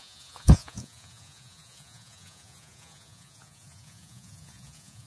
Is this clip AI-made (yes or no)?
yes